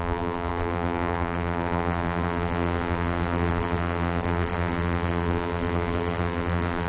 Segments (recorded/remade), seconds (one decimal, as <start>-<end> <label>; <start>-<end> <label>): 0.0-6.9 remade

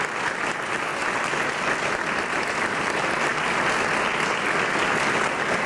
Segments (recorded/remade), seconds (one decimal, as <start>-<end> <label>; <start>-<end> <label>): 0.0-5.7 recorded

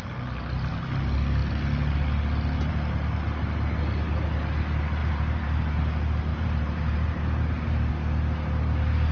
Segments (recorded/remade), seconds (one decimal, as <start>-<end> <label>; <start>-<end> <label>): 0.0-5.0 recorded; 5.0-5.7 remade; 5.7-6.3 recorded; 6.3-7.9 remade; 7.9-9.1 recorded

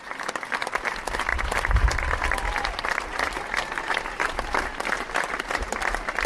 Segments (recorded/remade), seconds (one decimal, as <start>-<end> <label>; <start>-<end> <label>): 0.0-6.3 remade

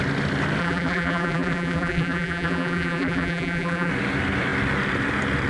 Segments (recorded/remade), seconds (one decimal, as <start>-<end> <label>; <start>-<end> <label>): 0.0-0.6 recorded; 0.6-3.9 remade; 3.9-5.5 recorded

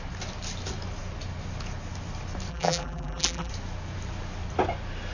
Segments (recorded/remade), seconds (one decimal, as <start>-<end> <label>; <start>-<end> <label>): 0.0-2.5 recorded; 2.5-3.5 remade; 3.5-5.1 recorded

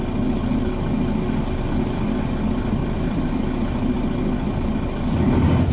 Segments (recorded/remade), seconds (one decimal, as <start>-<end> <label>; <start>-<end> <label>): 0.0-2.8 recorded; 2.8-5.7 remade